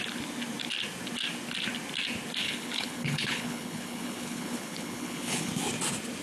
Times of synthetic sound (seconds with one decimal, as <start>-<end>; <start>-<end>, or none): 2.4-5.5